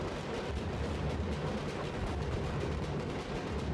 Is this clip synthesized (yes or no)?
no